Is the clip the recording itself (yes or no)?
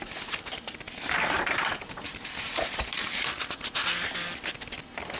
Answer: yes